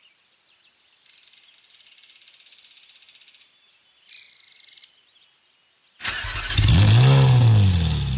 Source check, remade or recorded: recorded